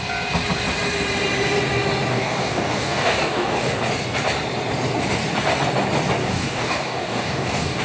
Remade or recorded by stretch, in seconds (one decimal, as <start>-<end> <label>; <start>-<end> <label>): 0.0-2.1 recorded; 2.1-3.9 remade; 3.9-6.2 recorded; 6.2-7.8 remade